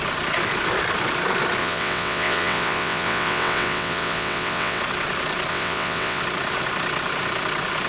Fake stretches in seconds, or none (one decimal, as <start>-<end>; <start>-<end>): 1.6-4.8; 5.5-6.2